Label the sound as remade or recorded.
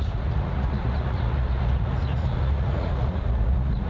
remade